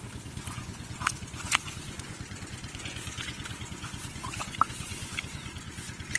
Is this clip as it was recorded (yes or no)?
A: no